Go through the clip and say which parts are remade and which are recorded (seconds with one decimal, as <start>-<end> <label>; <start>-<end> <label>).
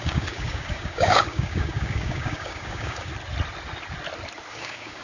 0.0-3.1 remade; 3.1-4.5 recorded; 4.5-5.0 remade